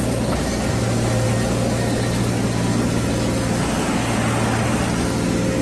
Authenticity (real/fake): real